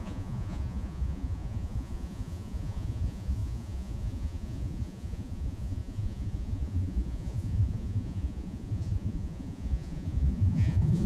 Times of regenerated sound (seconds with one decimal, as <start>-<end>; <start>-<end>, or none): 0.0-11.1